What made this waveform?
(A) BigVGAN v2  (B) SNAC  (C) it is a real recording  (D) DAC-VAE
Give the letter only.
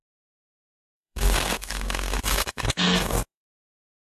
B